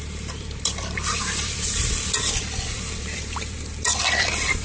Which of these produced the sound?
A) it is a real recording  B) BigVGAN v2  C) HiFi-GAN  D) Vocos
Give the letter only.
B